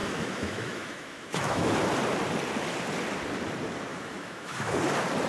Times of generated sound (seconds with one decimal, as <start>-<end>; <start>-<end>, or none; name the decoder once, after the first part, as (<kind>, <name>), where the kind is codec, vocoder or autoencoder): 0.0-1.8 (autoencoder, DAC-VAE); 3.9-4.7